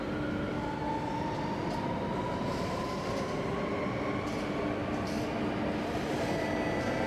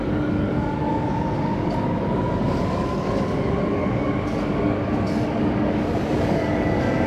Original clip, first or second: first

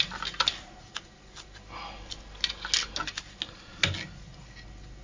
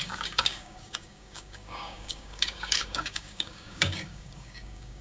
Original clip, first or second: first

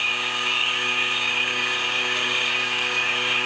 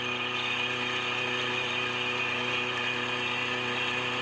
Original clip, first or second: second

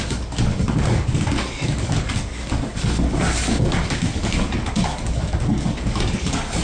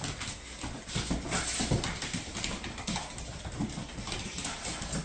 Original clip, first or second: second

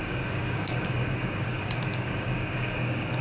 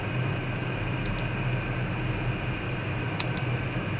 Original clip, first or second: second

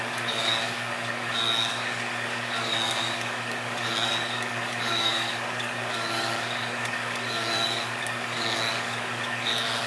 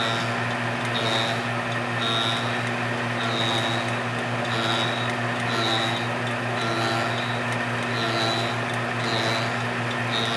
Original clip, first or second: second